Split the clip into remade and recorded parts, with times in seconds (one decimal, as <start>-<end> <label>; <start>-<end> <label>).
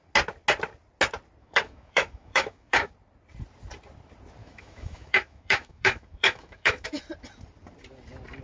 0.0-1.4 recorded; 1.4-2.9 remade; 2.9-4.4 recorded; 4.4-7.0 remade; 7.0-8.4 recorded